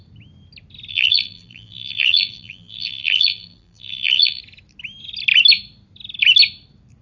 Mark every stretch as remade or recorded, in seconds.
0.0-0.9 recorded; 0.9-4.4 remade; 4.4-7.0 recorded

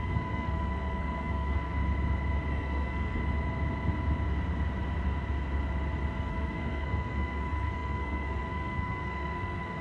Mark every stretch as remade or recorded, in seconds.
0.0-1.8 remade; 1.8-2.5 recorded; 2.5-3.2 remade; 3.2-6.2 recorded; 6.2-9.8 remade

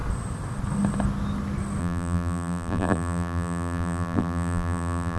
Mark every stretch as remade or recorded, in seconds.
0.0-1.8 recorded; 1.8-5.2 remade